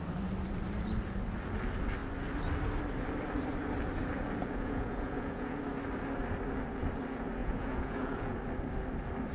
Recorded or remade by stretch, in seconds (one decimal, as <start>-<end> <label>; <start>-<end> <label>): 0.0-4.4 recorded; 4.4-5.6 remade; 5.6-7.4 recorded; 7.4-8.4 remade; 8.4-9.3 recorded